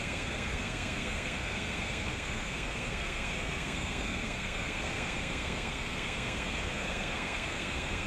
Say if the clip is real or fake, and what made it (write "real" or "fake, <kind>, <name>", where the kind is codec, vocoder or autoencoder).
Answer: fake, codec, SNAC